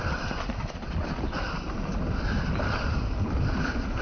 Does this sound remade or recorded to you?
recorded